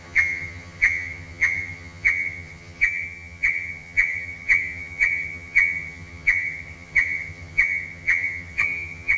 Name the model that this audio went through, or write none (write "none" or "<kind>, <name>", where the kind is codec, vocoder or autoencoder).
vocoder, HiFi-GAN